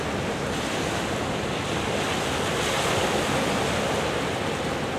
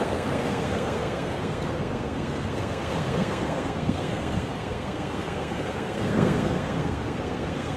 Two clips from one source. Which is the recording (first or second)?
first